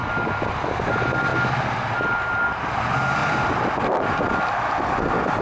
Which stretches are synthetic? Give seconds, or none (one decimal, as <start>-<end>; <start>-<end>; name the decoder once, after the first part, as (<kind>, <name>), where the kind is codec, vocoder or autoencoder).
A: none